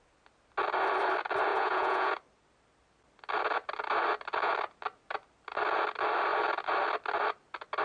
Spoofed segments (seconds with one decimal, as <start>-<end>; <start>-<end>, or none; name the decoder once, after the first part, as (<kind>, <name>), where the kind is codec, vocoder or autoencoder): 1.5-2.1 (vocoder, Vocos)